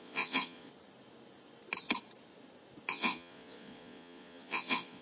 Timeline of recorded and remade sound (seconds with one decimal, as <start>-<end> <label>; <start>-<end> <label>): 0.0-0.7 remade; 0.7-2.9 recorded; 2.9-5.0 remade